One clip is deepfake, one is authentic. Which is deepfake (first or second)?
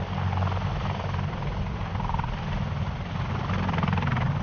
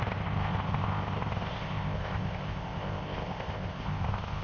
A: second